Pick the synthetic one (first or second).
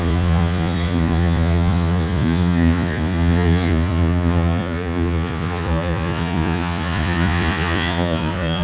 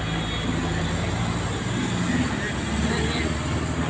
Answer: first